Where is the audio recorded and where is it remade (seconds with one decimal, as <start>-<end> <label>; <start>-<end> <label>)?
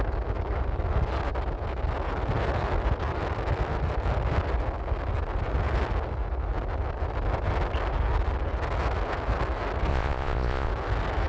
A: 0.0-9.9 recorded; 9.9-10.7 remade; 10.7-11.3 recorded